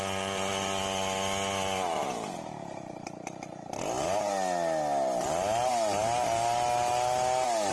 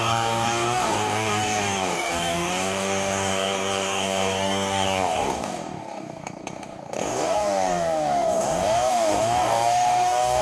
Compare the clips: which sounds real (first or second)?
first